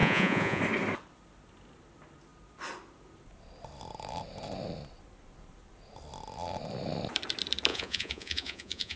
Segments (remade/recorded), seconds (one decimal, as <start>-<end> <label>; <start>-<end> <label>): 0.0-0.6 remade; 0.6-7.7 recorded; 7.7-9.0 remade